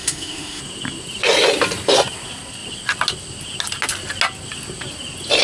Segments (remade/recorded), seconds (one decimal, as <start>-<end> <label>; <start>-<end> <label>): 0.0-0.6 remade; 0.6-5.4 recorded